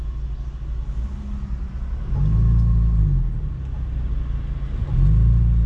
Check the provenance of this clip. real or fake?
real